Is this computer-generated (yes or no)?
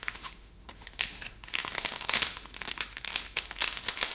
yes